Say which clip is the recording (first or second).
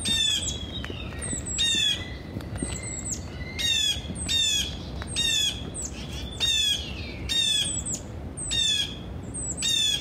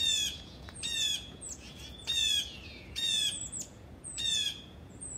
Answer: first